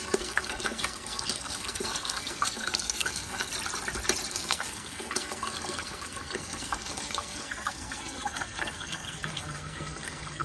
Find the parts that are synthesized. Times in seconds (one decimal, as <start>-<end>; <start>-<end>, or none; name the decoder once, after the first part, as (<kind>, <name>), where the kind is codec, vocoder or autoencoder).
0.0-3.5 (codec, SNAC); 4.3-10.4